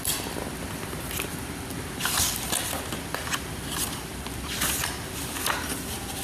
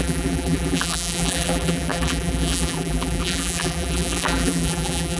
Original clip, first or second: first